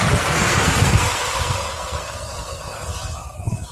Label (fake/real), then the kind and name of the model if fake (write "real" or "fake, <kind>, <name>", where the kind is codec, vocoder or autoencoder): fake, codec, SNAC